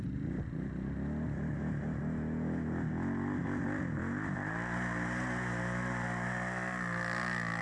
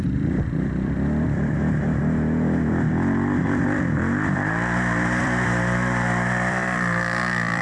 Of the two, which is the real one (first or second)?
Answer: first